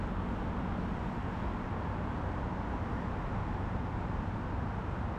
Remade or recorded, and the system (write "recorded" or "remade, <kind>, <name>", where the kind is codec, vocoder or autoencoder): recorded